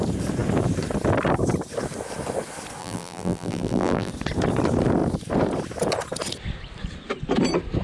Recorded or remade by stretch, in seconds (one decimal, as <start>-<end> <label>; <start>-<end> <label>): 0.0-2.8 recorded; 2.8-4.1 remade; 4.1-7.8 recorded